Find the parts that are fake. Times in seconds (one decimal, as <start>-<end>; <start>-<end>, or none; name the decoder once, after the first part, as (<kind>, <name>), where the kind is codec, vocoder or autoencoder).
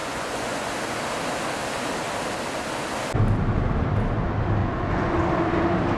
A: 0.0-0.7 (vocoder, Vocos); 4.6-5.1